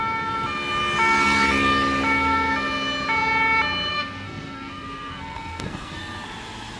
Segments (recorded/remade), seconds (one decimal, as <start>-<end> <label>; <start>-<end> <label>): 0.0-3.9 recorded; 3.9-6.0 remade; 6.0-6.8 recorded